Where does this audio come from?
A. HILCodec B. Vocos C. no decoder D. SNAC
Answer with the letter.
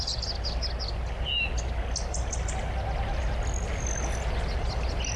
C